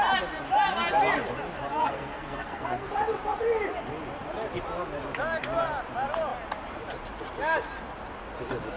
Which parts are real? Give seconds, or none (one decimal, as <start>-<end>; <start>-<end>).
0.0-1.7; 2.9-8.8